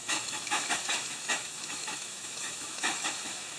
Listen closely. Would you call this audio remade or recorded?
remade